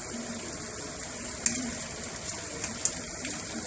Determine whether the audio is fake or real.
real